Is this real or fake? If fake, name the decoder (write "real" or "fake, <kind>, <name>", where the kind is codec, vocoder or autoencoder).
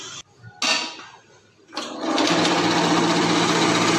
real